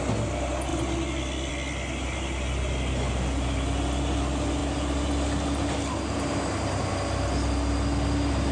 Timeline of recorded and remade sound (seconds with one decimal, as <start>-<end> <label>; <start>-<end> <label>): 0.0-8.5 recorded